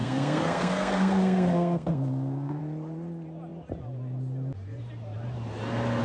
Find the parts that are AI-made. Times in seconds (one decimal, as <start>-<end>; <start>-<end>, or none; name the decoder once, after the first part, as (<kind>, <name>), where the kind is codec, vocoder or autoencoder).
0.0-2.6 (codec, SNAC)